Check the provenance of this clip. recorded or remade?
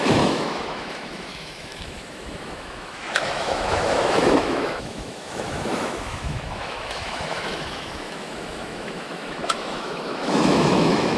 remade